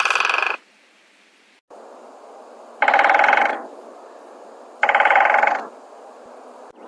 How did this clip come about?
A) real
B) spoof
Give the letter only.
A